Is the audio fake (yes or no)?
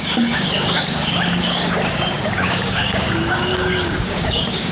yes